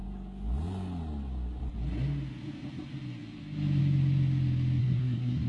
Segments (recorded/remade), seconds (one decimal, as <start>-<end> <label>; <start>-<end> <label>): 0.0-4.8 recorded; 4.8-5.5 remade

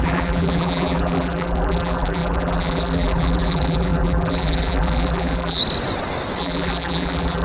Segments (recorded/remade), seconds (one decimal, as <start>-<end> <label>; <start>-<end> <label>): 0.0-5.6 remade; 5.6-6.4 recorded; 6.4-7.4 remade

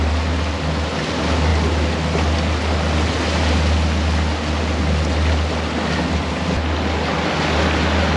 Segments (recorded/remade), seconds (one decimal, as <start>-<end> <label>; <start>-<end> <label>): 0.0-8.2 recorded

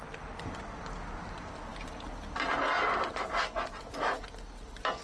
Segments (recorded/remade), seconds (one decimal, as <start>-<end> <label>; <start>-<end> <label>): 0.0-5.0 recorded

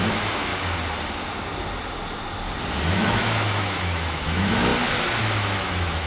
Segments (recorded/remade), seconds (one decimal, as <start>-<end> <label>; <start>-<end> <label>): 0.0-0.5 remade; 0.5-2.9 recorded; 2.9-4.7 remade; 4.7-5.2 recorded; 5.2-6.1 remade

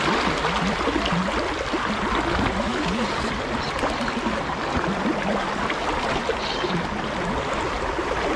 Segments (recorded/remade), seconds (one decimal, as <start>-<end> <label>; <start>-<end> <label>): 0.0-8.4 recorded

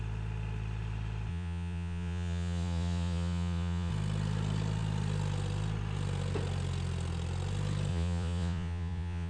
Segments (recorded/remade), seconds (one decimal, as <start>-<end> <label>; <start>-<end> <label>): 0.0-1.3 recorded; 1.3-3.9 remade; 3.9-7.9 recorded; 7.9-9.3 remade